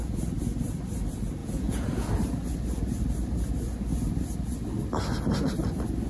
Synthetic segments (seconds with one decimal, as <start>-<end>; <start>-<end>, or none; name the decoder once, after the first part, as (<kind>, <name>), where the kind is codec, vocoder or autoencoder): 1.4-2.1 (vocoder, Vocos)